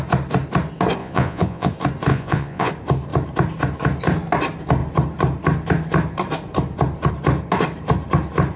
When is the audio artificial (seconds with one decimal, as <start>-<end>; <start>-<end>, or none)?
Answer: 1.0-1.7; 2.1-2.7